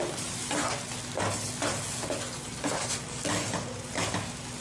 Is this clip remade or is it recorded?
recorded